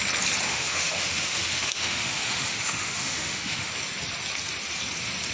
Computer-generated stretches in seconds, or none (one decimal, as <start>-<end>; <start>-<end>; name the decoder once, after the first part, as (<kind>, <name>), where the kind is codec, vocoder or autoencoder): 0.5-3.7 (autoencoder, DAC-VAE)